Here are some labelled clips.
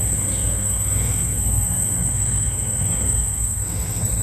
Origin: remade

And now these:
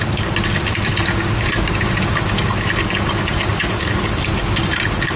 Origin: recorded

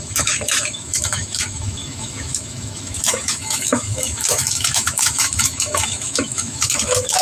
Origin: remade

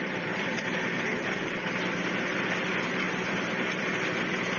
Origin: remade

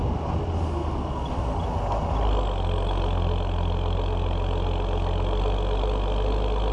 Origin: recorded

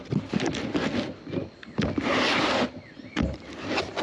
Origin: recorded